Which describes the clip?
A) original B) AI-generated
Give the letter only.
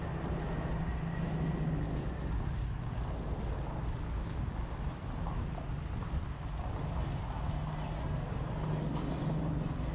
A